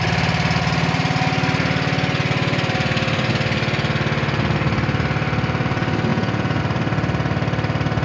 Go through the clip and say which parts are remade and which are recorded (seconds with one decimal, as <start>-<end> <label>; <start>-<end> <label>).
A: 0.0-6.1 recorded; 6.1-6.6 remade; 6.6-8.0 recorded